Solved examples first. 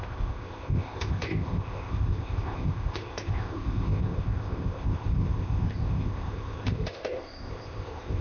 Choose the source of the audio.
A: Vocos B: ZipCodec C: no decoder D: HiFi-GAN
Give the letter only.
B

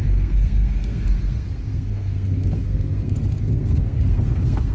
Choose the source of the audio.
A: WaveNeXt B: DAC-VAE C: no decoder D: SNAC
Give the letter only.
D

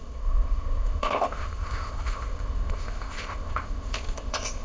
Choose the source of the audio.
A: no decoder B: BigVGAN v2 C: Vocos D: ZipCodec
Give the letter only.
D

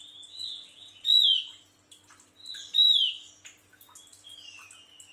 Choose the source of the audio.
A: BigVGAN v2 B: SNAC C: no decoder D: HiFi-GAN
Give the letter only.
C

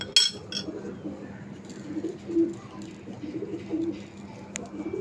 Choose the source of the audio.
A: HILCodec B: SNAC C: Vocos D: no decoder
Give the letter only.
D